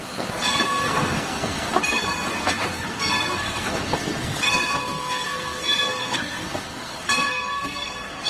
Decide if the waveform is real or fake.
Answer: fake